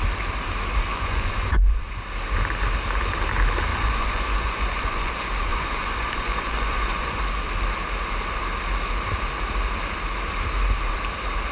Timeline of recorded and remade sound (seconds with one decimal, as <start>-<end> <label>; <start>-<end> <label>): 0.0-0.9 recorded; 0.9-2.0 remade; 2.0-3.7 recorded; 3.7-5.1 remade; 5.1-5.5 recorded; 5.5-7.2 remade; 7.2-11.5 recorded